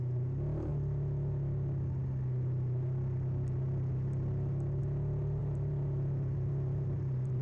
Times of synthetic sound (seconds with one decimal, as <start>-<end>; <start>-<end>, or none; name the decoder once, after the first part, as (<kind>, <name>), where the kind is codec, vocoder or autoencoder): 5.4-7.4 (vocoder, BigVGAN v2)